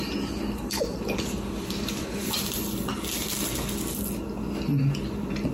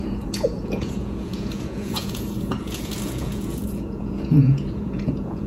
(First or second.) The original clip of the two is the first